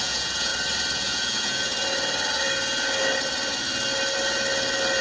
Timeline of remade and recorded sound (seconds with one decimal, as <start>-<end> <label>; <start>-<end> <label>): 0.0-0.5 remade; 0.5-1.0 recorded; 1.0-1.7 remade; 1.7-5.0 recorded